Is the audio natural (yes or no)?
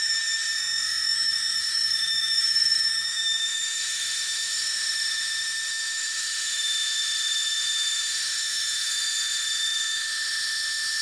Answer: no